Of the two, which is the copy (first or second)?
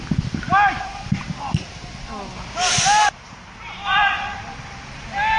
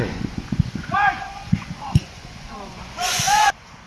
second